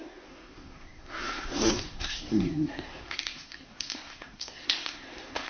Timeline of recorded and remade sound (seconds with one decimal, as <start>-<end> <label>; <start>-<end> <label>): 0.0-5.5 remade